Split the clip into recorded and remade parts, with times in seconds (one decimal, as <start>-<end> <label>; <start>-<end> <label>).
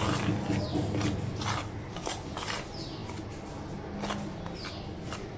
0.0-5.4 recorded